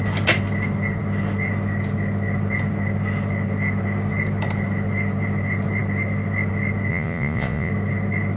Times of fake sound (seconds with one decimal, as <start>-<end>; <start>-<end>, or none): 6.9-7.7